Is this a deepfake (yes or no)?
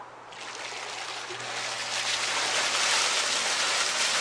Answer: no